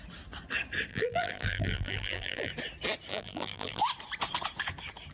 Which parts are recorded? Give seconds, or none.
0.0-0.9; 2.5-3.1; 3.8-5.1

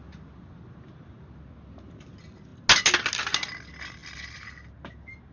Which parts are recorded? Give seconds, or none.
0.0-5.3

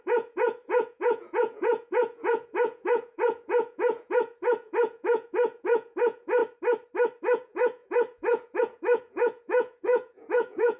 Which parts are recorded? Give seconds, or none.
6.4-7.2